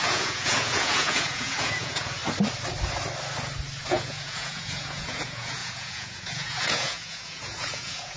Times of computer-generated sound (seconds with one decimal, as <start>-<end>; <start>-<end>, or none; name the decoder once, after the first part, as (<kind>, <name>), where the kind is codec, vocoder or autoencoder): 0.0-2.2 (vocoder, Vocos); 3.9-8.2